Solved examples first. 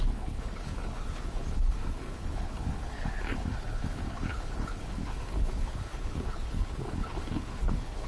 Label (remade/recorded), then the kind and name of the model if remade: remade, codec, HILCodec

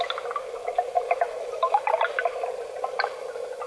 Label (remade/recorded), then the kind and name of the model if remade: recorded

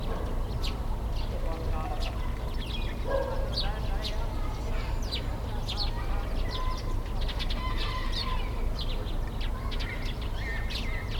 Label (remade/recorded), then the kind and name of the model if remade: recorded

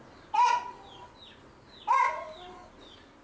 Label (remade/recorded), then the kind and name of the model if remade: recorded